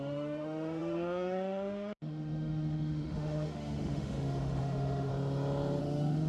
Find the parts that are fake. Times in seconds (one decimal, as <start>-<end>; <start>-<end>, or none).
0.0-5.1; 5.8-6.3